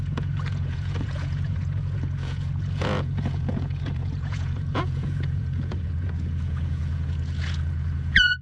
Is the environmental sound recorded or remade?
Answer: remade